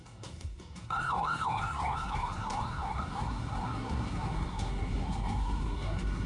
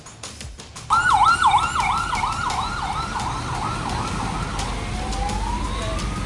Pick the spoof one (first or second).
first